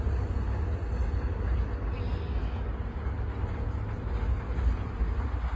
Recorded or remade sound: recorded